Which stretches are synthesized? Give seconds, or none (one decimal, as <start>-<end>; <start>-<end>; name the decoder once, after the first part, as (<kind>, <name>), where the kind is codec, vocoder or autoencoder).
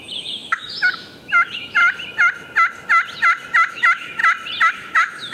0.0-1.8 (autoencoder, DAC-VAE); 3.7-4.2; 4.7-5.3